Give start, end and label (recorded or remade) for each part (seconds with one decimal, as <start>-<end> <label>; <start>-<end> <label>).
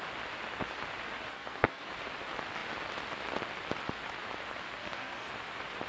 0.0-1.3 recorded; 1.3-1.9 remade; 1.9-4.8 recorded; 4.8-5.3 remade; 5.3-5.9 recorded